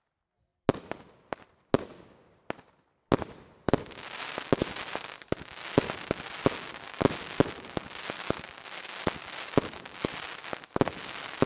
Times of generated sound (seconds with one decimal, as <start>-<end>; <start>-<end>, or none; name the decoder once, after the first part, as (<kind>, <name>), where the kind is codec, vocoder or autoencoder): none